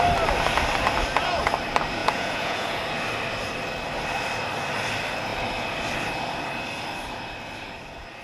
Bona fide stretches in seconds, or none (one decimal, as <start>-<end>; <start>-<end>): 0.0-2.0; 2.8-8.2